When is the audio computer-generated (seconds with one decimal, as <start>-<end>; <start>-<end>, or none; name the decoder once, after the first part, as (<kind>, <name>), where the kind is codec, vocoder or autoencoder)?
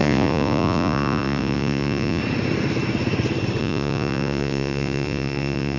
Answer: 0.0-2.2 (vocoder, Vocos); 3.6-5.8